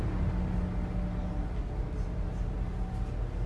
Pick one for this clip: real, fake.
real